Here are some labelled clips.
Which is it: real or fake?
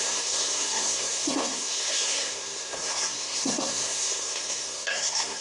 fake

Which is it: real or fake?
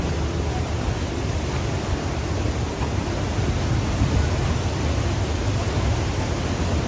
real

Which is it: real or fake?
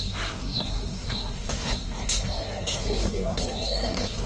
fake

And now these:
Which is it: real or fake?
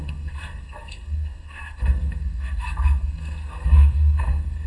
fake